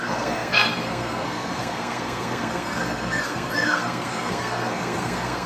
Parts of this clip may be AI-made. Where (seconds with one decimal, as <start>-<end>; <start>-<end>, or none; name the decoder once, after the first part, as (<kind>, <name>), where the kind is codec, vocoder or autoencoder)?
0.0-5.5 (codec, SNAC)